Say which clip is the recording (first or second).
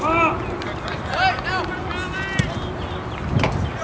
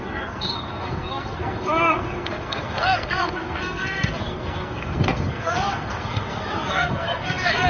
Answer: first